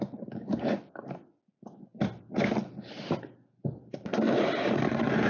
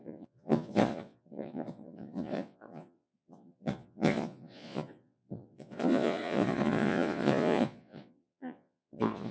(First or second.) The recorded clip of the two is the first